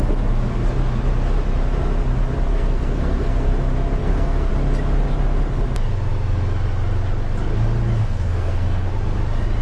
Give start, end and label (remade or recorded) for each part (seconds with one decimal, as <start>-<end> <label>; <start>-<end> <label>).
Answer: 0.0-2.5 recorded; 2.5-3.6 remade; 3.6-4.0 recorded; 4.0-4.5 remade; 4.5-8.0 recorded; 8.0-8.9 remade; 8.9-9.6 recorded